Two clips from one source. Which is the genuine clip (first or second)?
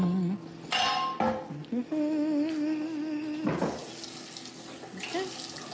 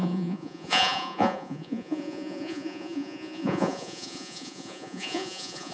first